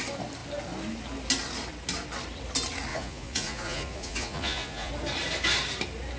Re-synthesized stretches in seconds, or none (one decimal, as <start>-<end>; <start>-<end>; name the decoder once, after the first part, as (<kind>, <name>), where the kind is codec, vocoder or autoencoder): 2.9-4.9 (vocoder, Vocos)